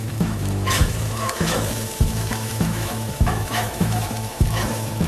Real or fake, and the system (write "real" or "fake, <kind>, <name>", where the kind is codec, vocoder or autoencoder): fake, autoencoder, DAC-VAE